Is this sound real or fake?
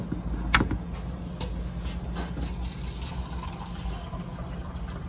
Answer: real